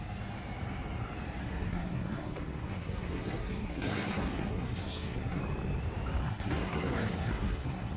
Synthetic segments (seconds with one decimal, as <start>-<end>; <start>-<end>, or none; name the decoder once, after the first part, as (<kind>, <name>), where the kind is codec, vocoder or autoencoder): 1.4-5.4 (codec, SNAC); 6.2-8.0